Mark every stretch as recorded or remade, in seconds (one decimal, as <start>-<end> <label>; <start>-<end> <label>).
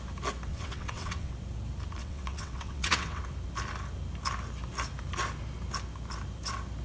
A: 0.0-0.5 recorded; 0.5-1.3 remade; 1.3-2.0 recorded; 2.0-3.2 remade; 3.2-6.8 recorded